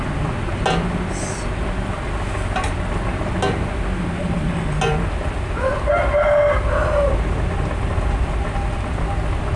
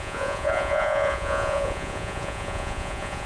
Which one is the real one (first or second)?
first